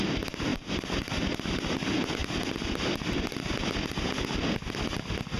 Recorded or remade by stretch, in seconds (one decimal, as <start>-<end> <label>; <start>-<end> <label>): 0.0-0.5 recorded; 0.5-1.1 remade; 1.1-5.4 recorded